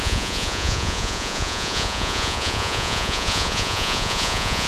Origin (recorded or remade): remade